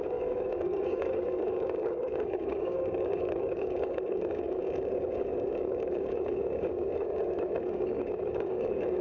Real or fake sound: fake